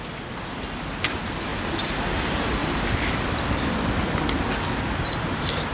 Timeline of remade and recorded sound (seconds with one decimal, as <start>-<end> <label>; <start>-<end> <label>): 0.0-5.7 recorded